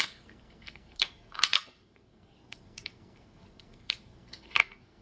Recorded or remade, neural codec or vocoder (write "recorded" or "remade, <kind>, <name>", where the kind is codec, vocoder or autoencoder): remade, codec, SNAC